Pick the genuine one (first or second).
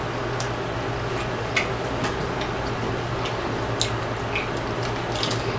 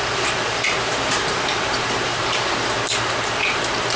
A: first